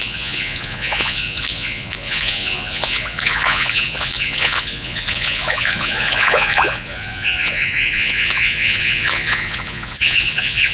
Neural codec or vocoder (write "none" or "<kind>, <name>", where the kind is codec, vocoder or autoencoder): vocoder, Vocos